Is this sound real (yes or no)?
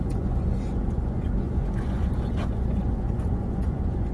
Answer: no